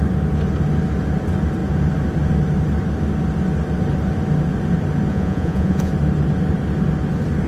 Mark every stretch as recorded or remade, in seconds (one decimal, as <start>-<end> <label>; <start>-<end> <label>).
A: 0.0-5.1 recorded; 5.1-5.9 remade; 5.9-7.5 recorded